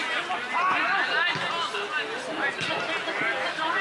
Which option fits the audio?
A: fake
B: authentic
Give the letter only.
B